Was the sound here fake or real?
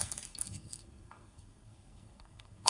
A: fake